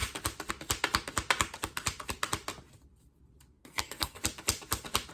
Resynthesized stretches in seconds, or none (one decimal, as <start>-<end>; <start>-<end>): 3.6-4.2